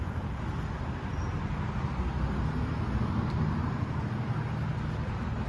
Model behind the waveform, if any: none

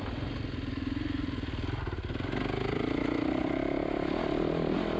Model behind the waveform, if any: none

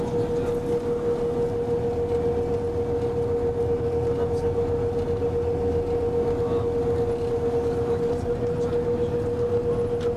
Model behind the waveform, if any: none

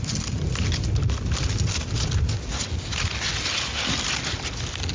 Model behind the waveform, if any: none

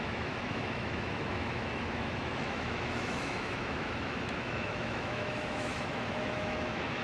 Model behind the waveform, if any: autoencoder, DAC-VAE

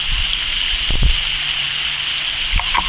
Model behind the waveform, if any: none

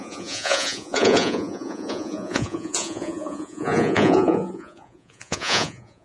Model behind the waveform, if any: vocoder, Vocos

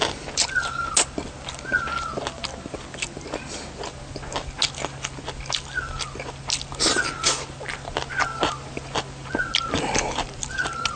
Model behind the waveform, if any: none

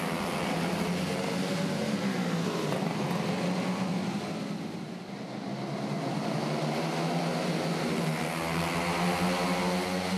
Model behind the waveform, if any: none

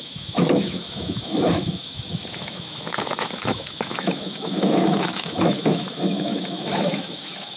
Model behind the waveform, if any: autoencoder, DAC-VAE